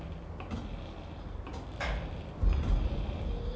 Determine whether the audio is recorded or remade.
recorded